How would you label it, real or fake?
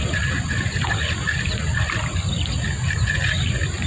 real